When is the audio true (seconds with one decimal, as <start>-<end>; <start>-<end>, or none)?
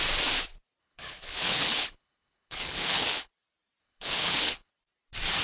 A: 0.0-0.8; 3.3-3.8; 4.7-5.4